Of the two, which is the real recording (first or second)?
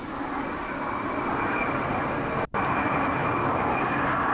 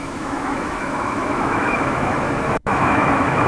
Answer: first